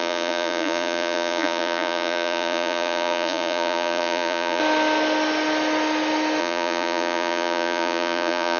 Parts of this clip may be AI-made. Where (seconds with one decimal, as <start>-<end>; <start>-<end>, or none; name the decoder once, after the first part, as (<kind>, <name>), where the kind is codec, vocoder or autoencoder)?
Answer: 0.0-4.6 (vocoder, Vocos); 6.4-8.6